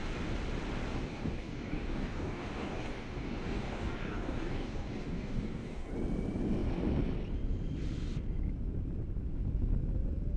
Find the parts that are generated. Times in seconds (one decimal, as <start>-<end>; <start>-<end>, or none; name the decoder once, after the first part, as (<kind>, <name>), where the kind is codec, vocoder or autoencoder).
1.1-5.9 (codec, DAC)